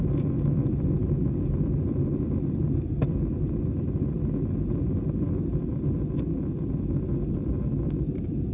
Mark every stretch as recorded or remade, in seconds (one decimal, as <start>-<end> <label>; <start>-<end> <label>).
0.0-8.5 recorded